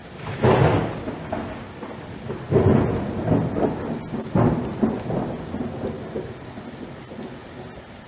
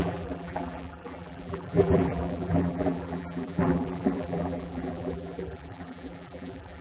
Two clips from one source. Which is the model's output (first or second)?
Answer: second